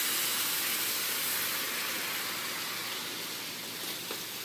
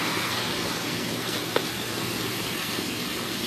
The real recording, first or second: first